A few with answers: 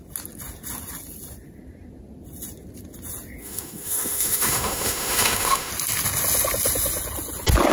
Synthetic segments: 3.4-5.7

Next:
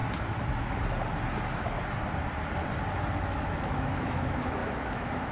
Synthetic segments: 3.2-5.3

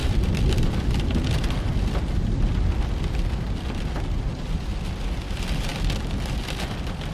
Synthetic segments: 0.0-0.7

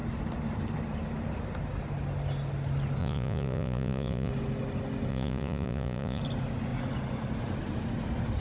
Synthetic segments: 3.0-4.3; 5.1-6.2

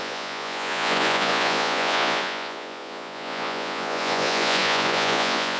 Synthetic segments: 0.0-5.6

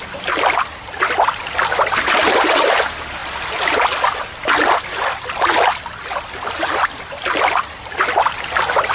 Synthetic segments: none

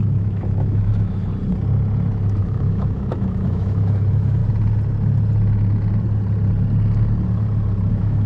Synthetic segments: 0.0-1.3; 2.4-4.4; 7.9-8.3